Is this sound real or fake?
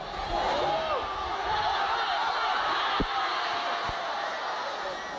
real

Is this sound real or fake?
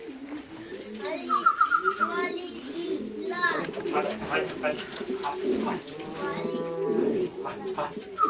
real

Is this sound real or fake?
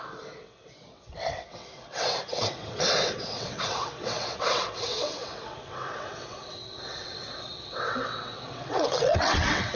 fake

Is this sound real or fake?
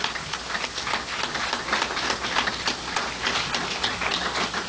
real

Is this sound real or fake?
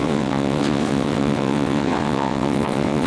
fake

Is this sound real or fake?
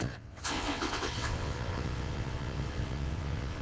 fake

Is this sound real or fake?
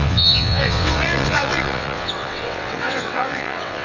fake